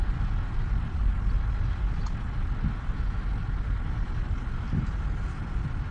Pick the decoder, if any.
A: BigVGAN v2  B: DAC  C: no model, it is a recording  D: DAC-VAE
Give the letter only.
C